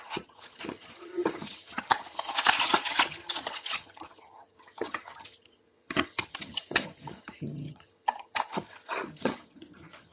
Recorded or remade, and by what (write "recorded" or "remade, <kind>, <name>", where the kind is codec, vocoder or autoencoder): remade, vocoder, HiFi-GAN